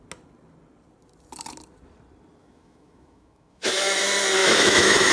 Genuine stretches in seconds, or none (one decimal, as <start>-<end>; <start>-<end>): 0.0-2.4; 4.0-4.4